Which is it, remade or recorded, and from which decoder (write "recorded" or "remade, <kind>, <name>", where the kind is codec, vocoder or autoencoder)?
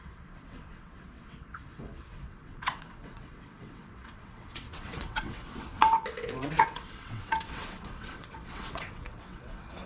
remade, vocoder, WaveNeXt